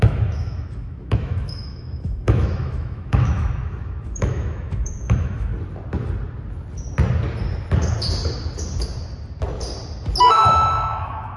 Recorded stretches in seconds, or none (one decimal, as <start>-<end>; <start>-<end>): 5.5-10.3